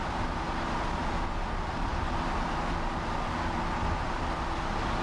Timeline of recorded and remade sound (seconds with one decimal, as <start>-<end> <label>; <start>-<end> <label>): 0.0-5.0 recorded